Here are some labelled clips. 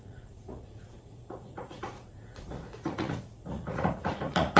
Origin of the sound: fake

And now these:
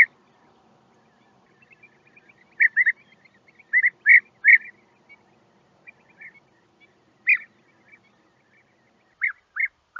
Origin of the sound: real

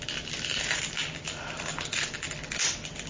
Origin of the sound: real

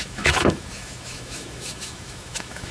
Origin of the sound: fake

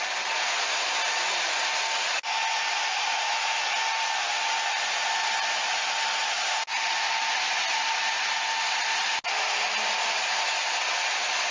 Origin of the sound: real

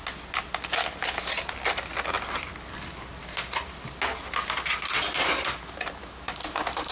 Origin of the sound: real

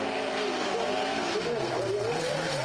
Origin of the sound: real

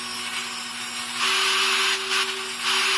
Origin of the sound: real